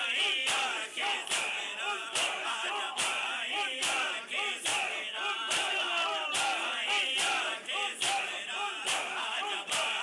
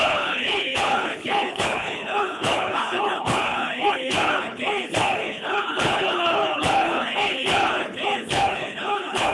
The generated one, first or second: second